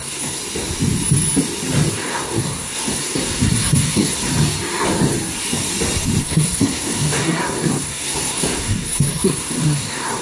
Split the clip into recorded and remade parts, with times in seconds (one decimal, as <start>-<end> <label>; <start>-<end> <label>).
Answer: 0.0-0.4 remade; 0.4-1.9 recorded; 1.9-4.3 remade; 4.3-6.2 recorded; 6.2-10.2 remade